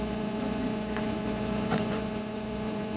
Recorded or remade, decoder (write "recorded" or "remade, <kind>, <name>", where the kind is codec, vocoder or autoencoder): remade, vocoder, Vocos